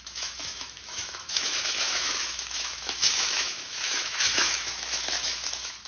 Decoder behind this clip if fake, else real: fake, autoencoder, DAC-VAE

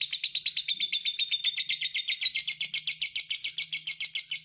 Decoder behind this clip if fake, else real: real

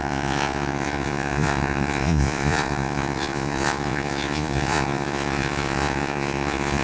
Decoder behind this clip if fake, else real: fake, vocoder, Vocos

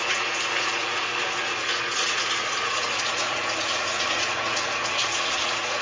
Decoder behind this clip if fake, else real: fake, vocoder, Vocos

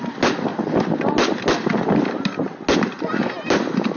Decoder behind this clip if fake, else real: real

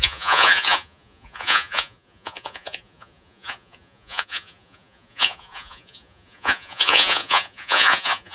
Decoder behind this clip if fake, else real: fake, vocoder, Vocos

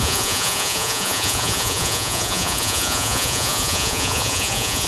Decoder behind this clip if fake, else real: fake, vocoder, Vocos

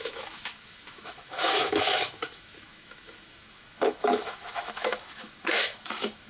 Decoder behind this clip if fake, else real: fake, autoencoder, DAC-VAE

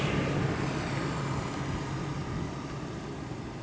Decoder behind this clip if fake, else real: real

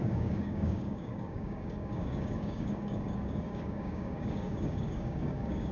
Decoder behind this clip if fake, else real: fake, codec, DAC